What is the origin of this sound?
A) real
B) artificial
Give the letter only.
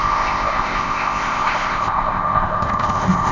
B